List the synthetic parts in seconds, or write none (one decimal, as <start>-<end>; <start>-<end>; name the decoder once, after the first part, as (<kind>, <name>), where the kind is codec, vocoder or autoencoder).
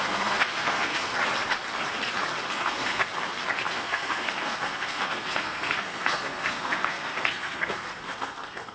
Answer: 0.0-1.1 (codec, SNAC); 2.5-3.1; 3.7-8.7